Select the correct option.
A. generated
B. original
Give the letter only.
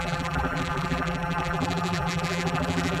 A